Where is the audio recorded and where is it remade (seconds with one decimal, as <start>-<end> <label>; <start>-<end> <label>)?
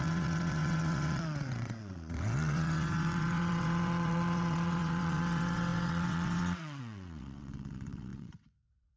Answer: 0.0-9.0 remade